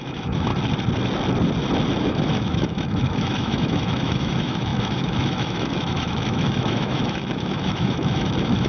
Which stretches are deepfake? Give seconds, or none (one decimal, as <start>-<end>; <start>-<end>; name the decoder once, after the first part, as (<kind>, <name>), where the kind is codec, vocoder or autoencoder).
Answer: 0.0-0.5 (autoencoder, DAC-VAE); 2.0-8.7